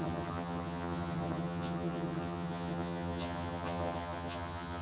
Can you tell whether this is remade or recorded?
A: remade